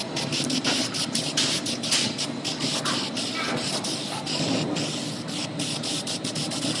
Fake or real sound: real